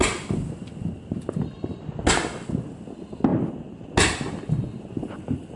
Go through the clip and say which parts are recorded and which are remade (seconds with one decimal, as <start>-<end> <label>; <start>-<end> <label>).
0.0-5.6 recorded